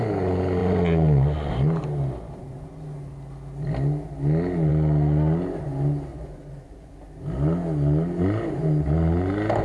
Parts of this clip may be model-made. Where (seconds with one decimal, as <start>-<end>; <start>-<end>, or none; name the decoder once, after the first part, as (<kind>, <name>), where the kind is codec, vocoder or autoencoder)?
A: 0.6-1.5 (vocoder, Vocos); 6.1-6.9